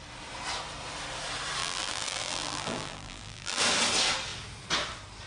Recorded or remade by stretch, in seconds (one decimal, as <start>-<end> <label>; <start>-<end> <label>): 0.0-1.6 recorded; 1.6-3.6 remade; 3.6-5.3 recorded